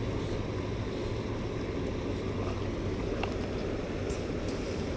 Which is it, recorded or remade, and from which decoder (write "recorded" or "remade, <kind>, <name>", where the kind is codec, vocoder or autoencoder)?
recorded